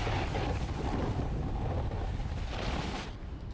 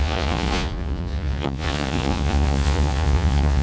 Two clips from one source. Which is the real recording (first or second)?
first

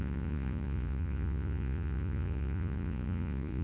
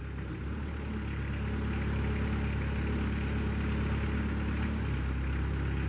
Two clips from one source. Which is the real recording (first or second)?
second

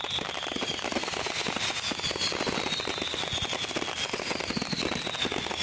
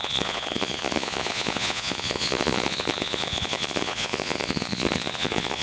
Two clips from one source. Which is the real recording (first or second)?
first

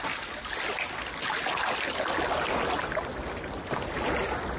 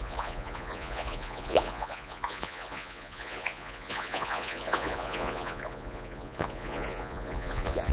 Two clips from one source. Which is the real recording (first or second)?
first